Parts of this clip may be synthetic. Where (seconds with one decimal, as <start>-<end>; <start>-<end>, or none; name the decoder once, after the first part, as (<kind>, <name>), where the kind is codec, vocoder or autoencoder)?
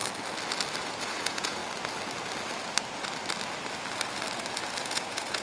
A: 1.0-1.6 (vocoder, Vocos); 4.8-5.4